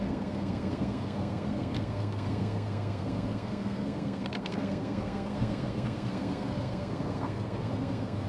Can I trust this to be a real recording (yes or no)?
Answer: no